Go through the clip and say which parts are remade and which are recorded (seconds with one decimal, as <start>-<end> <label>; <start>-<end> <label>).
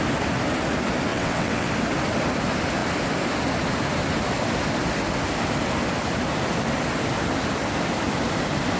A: 0.0-1.1 recorded; 1.1-1.7 remade; 1.7-8.8 recorded